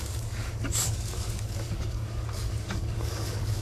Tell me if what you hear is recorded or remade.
remade